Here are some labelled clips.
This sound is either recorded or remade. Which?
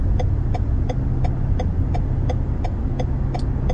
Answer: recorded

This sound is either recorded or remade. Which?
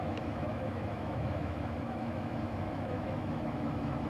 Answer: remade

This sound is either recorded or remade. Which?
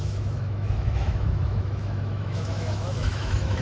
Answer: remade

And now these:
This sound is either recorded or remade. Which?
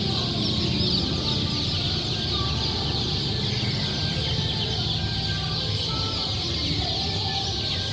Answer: recorded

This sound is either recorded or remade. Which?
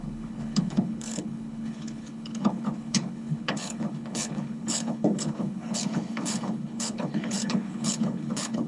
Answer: remade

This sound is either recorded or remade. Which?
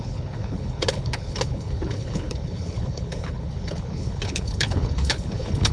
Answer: remade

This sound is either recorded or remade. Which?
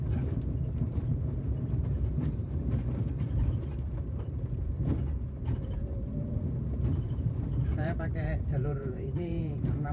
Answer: remade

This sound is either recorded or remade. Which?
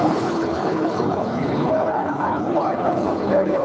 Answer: remade